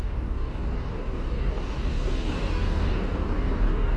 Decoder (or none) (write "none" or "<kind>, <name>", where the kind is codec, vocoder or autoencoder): codec, DAC